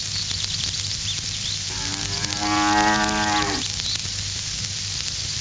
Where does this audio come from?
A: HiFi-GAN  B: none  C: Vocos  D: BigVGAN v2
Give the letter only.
B